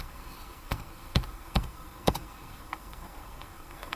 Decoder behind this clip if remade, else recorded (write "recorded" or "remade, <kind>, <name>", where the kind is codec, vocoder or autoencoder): remade, codec, SNAC